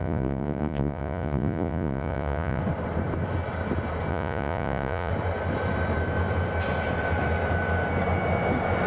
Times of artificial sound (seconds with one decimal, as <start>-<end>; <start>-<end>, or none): 0.0-2.6; 4.1-5.1